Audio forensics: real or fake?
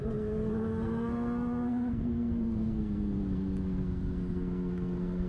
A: fake